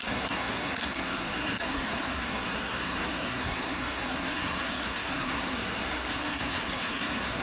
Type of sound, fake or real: fake